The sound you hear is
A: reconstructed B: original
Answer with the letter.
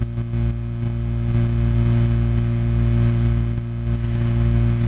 B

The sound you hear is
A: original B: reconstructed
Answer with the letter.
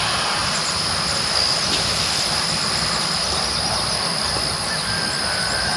A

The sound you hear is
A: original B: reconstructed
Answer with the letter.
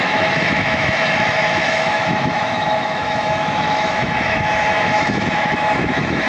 B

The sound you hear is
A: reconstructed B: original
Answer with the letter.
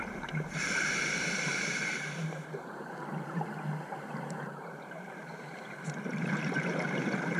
A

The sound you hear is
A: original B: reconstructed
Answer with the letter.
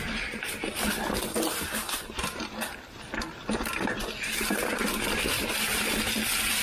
A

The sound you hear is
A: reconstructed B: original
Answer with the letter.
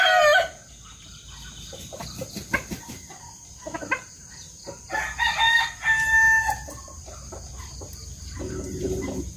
B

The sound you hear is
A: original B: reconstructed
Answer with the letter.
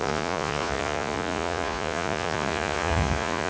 B